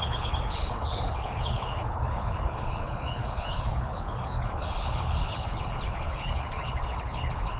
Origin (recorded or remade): remade